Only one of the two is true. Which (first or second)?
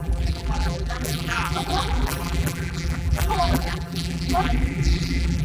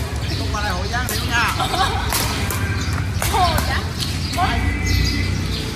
second